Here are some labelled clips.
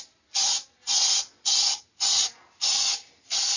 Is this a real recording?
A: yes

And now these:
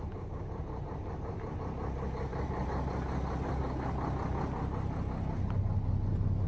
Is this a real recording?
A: yes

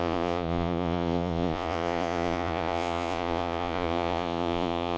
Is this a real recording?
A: no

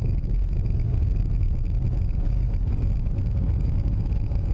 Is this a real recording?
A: no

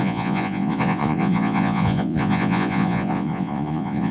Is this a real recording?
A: no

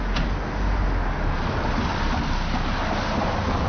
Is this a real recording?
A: yes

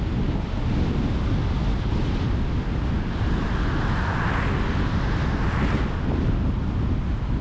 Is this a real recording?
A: yes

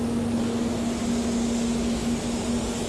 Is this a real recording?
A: yes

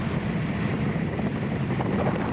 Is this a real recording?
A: yes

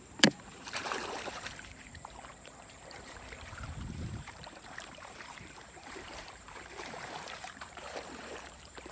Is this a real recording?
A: no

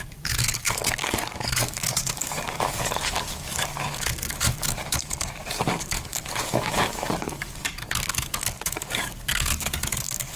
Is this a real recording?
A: no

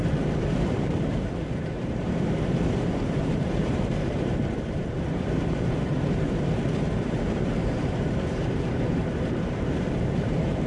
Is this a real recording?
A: no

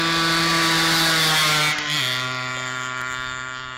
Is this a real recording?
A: yes